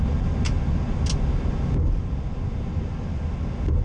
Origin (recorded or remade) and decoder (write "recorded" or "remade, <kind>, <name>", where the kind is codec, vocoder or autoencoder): recorded